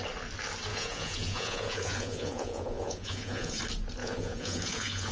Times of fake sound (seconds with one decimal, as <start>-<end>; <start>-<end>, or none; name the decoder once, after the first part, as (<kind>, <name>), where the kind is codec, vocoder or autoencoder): 0.7-3.6 (vocoder, Vocos); 4.0-5.1